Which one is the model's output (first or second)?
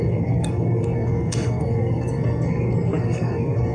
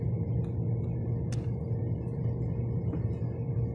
first